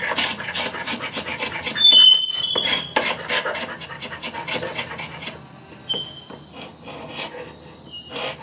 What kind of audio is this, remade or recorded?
recorded